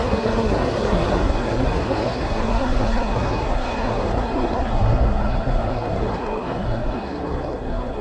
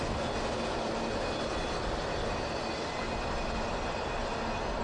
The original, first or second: second